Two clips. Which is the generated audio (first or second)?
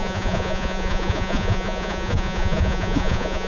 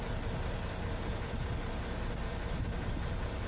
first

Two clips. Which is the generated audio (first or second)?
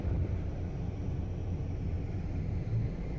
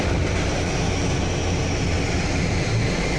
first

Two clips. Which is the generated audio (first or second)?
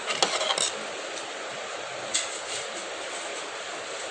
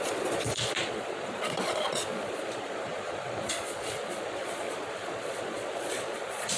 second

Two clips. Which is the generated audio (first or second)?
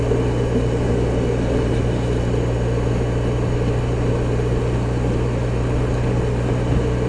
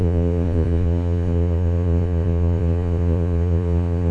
second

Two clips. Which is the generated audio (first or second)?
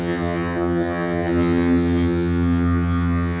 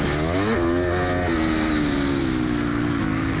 first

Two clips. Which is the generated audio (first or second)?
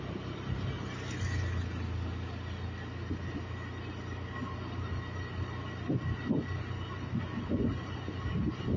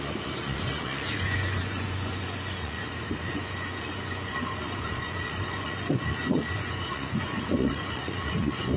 second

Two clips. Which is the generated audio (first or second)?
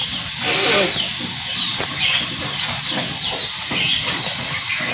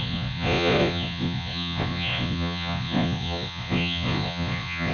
second